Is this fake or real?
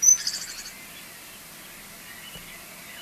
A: real